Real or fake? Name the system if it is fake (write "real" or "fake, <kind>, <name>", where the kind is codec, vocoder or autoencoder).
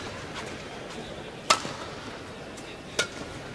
real